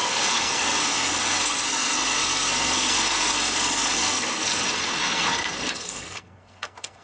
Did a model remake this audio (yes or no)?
yes